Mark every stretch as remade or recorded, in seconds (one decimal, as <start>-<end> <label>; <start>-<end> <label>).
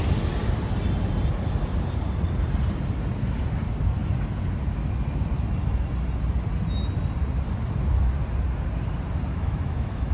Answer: 0.0-9.3 recorded; 9.3-10.1 remade